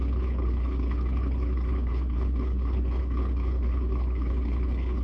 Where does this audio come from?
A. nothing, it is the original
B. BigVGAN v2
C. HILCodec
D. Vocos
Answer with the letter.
C